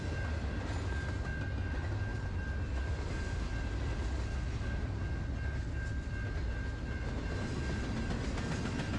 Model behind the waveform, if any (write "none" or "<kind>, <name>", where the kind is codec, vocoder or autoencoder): none